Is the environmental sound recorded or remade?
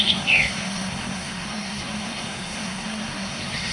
remade